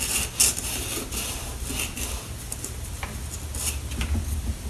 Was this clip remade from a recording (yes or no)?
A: no